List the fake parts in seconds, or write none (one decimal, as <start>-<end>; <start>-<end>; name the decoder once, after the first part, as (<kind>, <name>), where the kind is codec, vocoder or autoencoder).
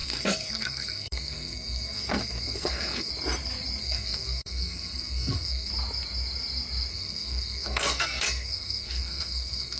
0.0-3.1 (codec, SNAC); 3.8-5.7; 6.9-9.8